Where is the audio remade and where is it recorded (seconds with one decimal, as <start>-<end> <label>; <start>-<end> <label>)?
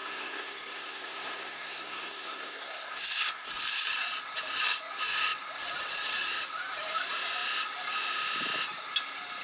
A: 0.0-3.5 remade; 3.5-9.4 recorded